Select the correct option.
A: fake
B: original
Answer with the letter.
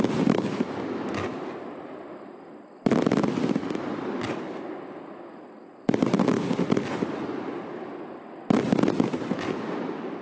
B